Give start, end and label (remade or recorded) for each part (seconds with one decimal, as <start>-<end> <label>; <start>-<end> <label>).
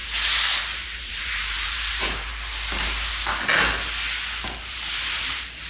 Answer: 0.0-0.6 recorded; 0.6-2.3 remade; 2.3-4.6 recorded; 4.6-5.7 remade